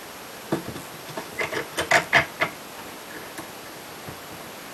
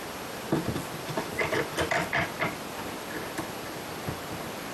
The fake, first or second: second